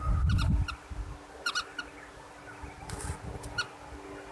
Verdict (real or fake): real